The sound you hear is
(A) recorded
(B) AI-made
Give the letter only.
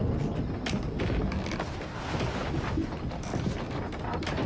A